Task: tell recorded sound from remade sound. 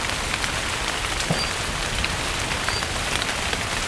recorded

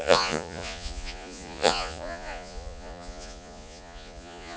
remade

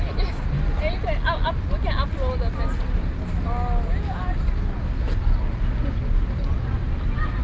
recorded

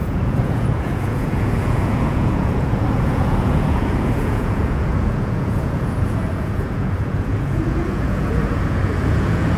remade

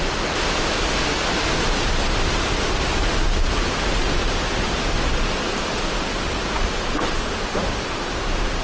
recorded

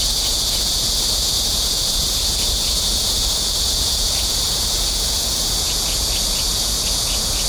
remade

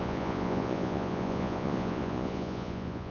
remade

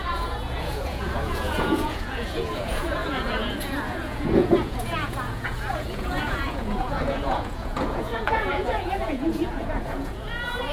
remade